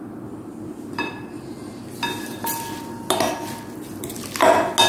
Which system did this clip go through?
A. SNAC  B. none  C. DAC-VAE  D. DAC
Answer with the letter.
B